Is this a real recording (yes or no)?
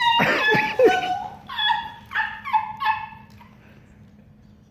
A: yes